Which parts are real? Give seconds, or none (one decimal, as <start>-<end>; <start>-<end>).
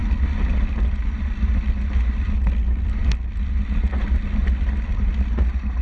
0.0-5.8